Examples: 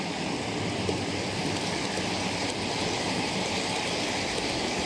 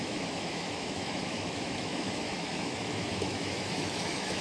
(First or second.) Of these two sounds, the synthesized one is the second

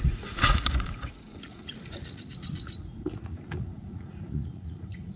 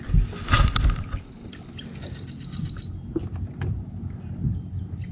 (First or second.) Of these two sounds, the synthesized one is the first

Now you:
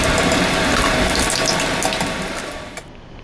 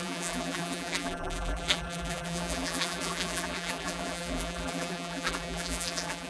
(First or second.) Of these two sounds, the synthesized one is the second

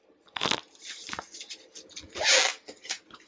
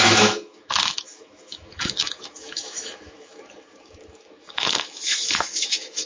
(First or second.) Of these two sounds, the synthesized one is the second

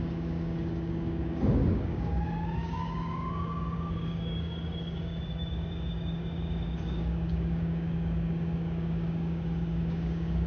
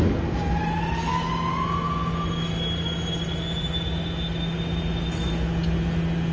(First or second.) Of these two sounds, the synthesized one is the first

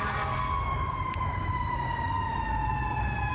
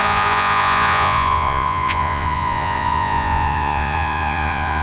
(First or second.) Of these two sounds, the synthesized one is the second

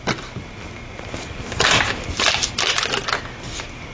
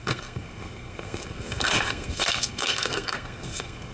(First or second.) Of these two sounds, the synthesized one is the second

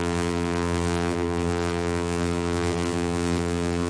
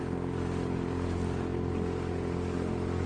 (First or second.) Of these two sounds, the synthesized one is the first